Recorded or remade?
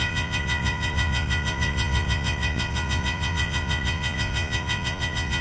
remade